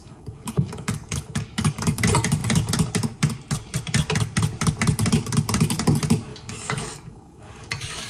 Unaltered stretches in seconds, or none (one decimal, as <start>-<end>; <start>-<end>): 2.0-6.3